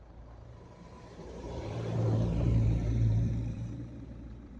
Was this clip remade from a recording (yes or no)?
yes